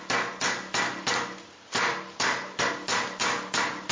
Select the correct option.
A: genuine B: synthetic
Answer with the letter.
A